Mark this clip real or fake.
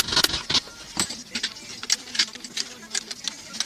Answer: real